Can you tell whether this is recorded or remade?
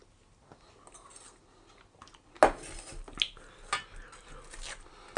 recorded